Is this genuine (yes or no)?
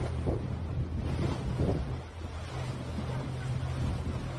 yes